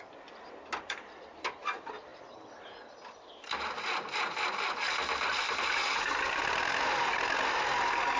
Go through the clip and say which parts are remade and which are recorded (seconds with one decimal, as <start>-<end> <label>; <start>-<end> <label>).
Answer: 0.0-2.1 recorded; 2.1-5.9 remade; 5.9-8.2 recorded